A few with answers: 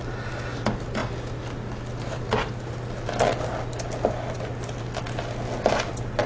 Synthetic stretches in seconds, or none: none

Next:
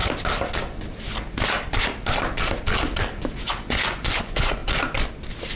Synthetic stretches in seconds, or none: 3.4-4.6 (vocoder, Vocos)

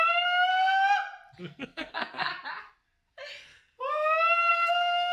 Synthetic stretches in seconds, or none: 0.0-0.5 (codec, SNAC); 1.4-2.3; 4.5-5.1

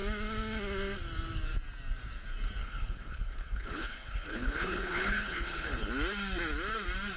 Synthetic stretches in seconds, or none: 2.6-5.9 (codec, HILCodec)

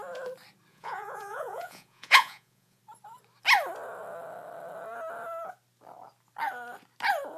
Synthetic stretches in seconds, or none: 0.7-2.8 (vocoder, Vocos)

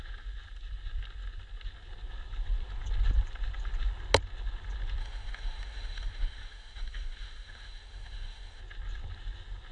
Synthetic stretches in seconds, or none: 5.0-8.6 (autoencoder, DAC-VAE)

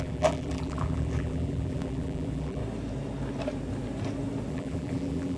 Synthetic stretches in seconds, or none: 0.0-2.6 (vocoder, BigVGAN v2); 4.5-5.4